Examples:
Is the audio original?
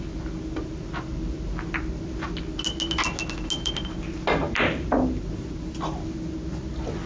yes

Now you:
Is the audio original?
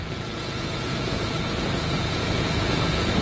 no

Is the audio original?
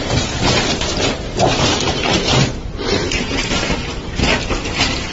no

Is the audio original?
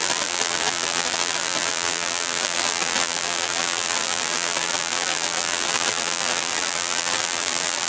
no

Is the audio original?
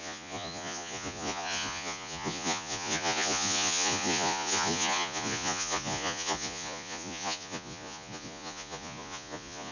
no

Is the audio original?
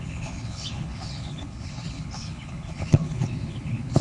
no